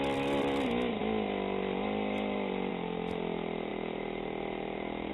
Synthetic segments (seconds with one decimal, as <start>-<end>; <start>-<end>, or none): none